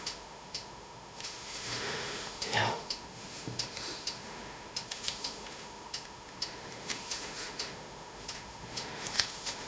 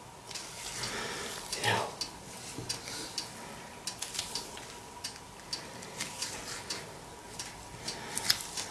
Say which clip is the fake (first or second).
first